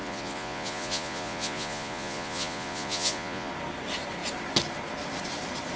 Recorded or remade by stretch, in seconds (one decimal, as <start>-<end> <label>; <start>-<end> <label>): 0.0-3.5 remade; 3.5-5.8 recorded